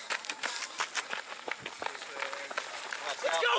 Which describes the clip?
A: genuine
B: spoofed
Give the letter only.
A